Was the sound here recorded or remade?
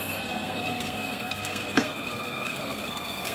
remade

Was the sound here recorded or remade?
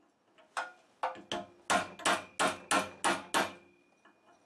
recorded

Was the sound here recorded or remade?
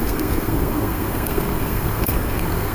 remade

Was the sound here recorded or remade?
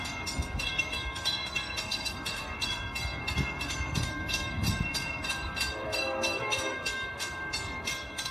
remade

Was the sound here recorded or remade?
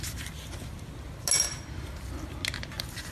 recorded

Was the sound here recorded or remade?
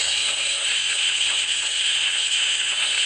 remade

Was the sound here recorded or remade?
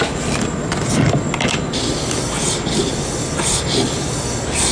recorded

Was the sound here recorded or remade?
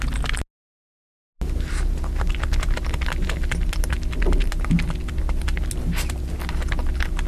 recorded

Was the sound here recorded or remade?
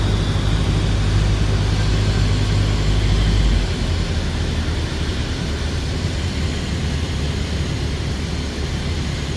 recorded